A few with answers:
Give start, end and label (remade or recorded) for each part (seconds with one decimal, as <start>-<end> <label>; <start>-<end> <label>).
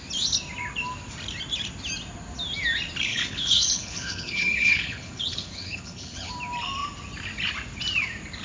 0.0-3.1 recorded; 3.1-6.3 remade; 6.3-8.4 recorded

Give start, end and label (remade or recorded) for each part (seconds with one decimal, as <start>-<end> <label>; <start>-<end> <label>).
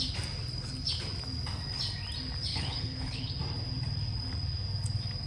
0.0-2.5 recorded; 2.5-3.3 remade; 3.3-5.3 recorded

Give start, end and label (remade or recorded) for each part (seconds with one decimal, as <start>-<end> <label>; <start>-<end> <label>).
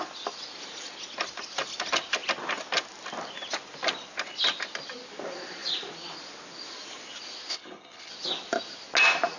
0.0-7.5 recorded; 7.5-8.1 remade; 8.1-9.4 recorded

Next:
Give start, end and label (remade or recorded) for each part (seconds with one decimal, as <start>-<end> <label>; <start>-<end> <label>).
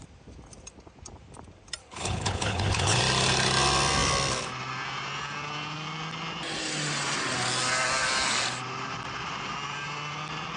0.0-1.8 recorded; 1.8-3.0 remade; 3.0-10.6 recorded